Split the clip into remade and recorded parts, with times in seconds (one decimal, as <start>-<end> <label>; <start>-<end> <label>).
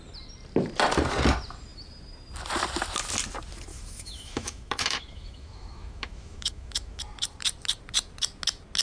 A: 0.0-3.7 recorded; 3.7-7.0 remade; 7.0-8.8 recorded